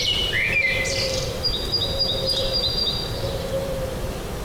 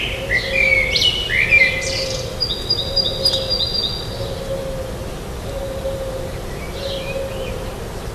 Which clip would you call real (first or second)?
second